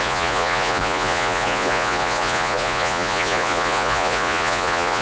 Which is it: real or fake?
fake